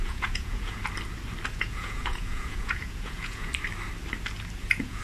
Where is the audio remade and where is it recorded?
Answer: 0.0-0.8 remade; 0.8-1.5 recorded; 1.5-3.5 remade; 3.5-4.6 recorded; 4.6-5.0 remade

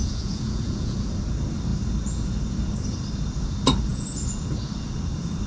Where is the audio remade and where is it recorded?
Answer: 0.0-1.1 remade; 1.1-3.9 recorded; 3.9-4.5 remade; 4.5-5.5 recorded

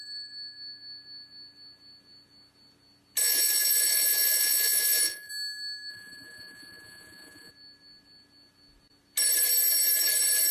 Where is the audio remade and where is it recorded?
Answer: 0.0-3.2 recorded; 3.2-5.3 remade; 5.3-5.9 recorded; 5.9-7.5 remade; 7.5-10.5 recorded

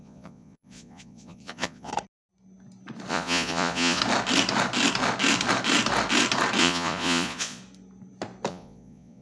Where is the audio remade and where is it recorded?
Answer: 0.0-1.9 remade; 1.9-3.1 recorded; 3.1-4.0 remade; 4.0-6.6 recorded; 6.6-7.6 remade; 7.6-8.5 recorded; 8.5-9.2 remade

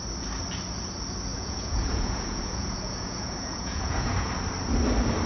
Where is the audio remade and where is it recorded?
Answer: 0.0-1.3 recorded; 1.3-4.3 remade; 4.3-5.3 recorded